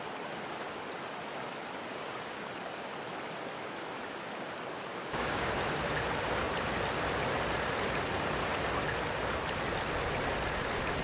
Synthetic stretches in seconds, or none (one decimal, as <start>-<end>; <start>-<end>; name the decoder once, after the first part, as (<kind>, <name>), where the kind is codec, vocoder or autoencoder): 1.9-2.5 (codec, DAC); 4.9-5.5